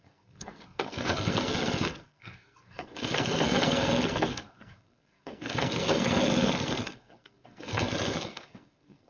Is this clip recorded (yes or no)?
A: no